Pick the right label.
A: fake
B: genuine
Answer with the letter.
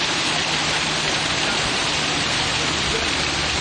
B